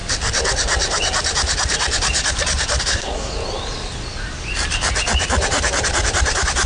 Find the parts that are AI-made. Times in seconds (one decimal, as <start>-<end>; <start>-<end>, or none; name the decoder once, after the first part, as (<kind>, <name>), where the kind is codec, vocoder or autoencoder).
2.8-3.3 (codec, SNAC)